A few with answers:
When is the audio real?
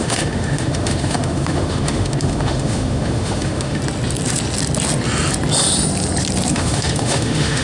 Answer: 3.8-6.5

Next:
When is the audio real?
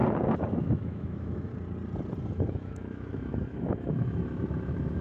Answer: 0.0-0.5; 1.5-2.3